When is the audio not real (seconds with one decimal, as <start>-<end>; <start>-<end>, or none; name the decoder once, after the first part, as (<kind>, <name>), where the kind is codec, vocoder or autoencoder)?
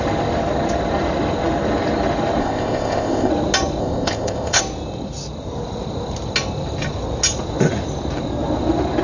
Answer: 2.4-3.3 (codec, ZipCodec); 3.8-4.6